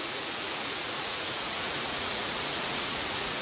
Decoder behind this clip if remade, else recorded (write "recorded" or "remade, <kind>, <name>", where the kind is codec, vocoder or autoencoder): remade, vocoder, Vocos